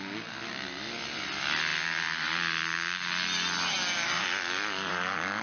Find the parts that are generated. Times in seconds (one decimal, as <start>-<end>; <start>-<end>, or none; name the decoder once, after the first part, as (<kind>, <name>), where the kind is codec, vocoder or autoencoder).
none